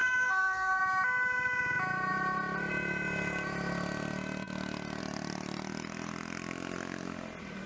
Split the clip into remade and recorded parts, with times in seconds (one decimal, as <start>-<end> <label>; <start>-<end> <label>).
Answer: 0.0-0.8 remade; 0.8-7.7 recorded